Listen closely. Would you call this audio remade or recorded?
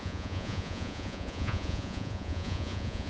remade